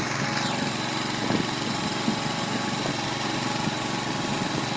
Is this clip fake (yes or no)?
no